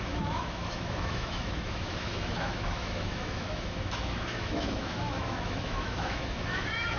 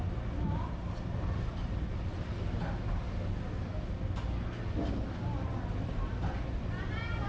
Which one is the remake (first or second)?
first